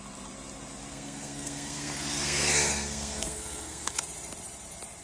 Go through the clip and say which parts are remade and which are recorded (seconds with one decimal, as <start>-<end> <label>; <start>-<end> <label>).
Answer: 0.0-0.9 recorded; 0.9-3.9 remade; 3.9-5.0 recorded